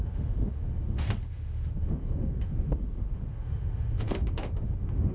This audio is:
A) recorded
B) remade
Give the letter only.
B